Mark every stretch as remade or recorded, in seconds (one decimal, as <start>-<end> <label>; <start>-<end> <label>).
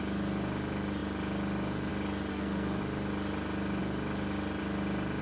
0.0-2.3 recorded; 2.3-2.8 remade; 2.8-5.2 recorded